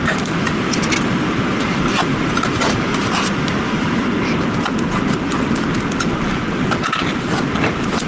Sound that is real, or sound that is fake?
real